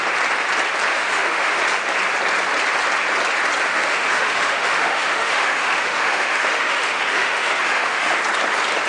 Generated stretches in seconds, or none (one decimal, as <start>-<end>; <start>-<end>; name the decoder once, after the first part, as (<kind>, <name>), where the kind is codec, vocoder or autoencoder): 0.9-1.6 (autoencoder, DAC-VAE); 3.7-8.2